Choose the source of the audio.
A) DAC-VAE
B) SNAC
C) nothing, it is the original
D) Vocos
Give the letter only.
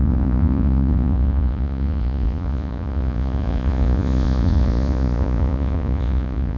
D